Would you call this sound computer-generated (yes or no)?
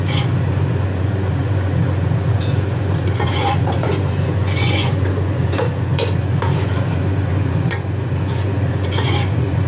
yes